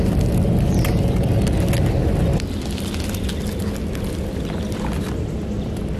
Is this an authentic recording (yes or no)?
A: yes